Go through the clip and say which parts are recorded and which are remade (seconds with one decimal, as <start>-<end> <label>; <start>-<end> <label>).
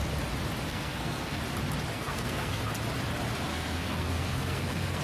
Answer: 0.0-0.7 recorded; 0.7-1.4 remade; 1.4-1.9 recorded; 1.9-2.6 remade; 2.6-3.5 recorded; 3.5-5.0 remade